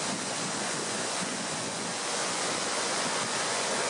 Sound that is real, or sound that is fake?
fake